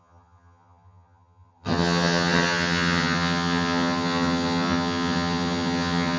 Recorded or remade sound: remade